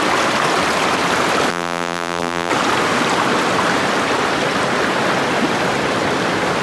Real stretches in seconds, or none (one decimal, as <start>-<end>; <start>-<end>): 0.0-1.5; 2.5-6.6